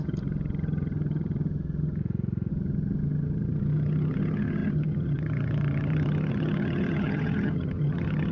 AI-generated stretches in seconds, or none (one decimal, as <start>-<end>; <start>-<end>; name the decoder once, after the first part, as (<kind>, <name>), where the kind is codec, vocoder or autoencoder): 0.0-2.0 (vocoder, HiFi-GAN); 2.5-8.3